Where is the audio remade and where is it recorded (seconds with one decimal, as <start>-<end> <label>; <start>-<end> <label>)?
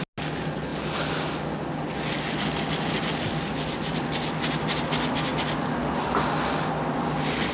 0.0-7.5 recorded